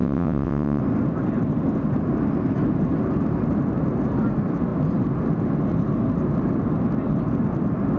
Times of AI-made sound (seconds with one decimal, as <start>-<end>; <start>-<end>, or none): 0.0-0.8